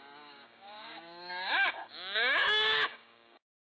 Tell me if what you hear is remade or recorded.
remade